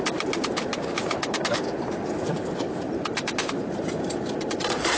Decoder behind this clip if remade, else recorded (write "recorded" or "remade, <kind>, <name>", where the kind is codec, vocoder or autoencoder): remade, vocoder, BigVGAN v2